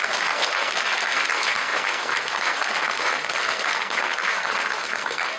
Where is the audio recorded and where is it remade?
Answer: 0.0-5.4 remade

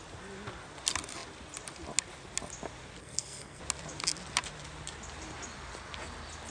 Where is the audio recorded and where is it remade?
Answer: 0.0-3.0 recorded; 3.0-3.6 remade; 3.6-6.5 recorded

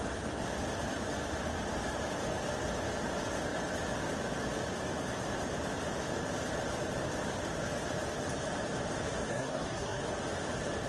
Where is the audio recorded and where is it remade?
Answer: 0.0-9.2 recorded; 9.2-10.0 remade; 10.0-10.9 recorded

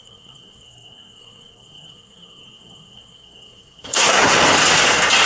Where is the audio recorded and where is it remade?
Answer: 0.0-4.3 remade; 4.3-5.3 recorded

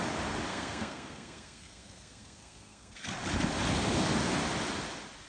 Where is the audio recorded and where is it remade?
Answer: 0.0-0.5 recorded; 0.5-3.1 remade; 3.1-5.3 recorded

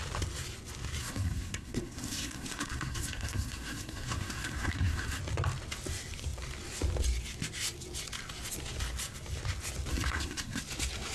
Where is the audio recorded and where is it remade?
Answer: 0.0-1.0 recorded; 1.0-5.2 remade; 5.2-9.9 recorded; 9.9-10.6 remade; 10.6-11.1 recorded